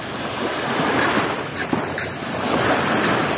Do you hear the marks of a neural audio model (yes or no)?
yes